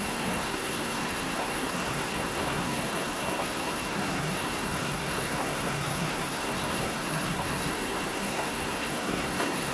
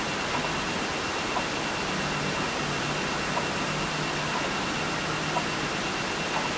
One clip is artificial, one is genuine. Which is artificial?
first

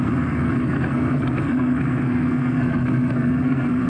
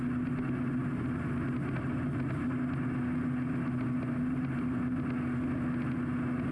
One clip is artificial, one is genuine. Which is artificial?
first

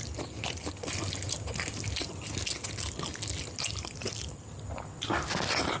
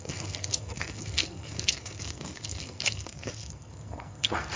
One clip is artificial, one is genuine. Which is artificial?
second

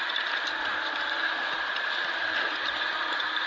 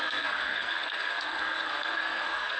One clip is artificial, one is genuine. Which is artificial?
second